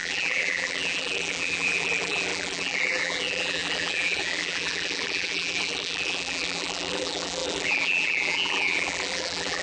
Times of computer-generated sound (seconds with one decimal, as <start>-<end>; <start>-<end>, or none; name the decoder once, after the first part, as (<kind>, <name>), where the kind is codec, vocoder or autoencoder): 0.0-9.6 (vocoder, BigVGAN v2)